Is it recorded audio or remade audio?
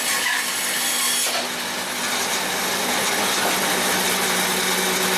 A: recorded